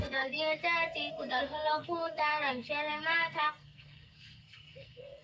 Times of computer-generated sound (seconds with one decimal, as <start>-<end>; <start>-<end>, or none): 0.0-0.6; 1.1-5.2